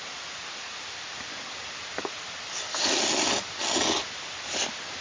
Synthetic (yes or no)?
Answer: no